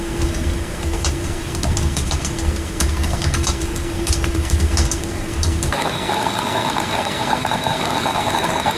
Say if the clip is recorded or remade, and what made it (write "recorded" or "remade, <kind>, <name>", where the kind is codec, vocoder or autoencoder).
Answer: remade, codec, SNAC